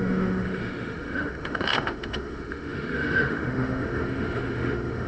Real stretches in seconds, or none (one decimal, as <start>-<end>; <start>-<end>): none